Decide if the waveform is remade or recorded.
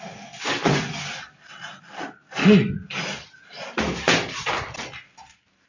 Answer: recorded